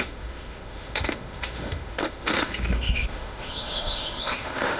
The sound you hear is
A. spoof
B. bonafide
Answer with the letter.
A